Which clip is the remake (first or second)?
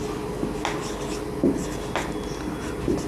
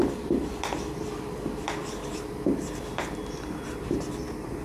second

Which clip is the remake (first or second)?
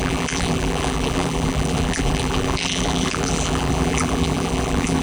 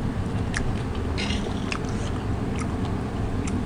first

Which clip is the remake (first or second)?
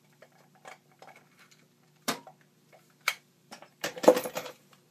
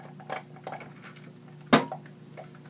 first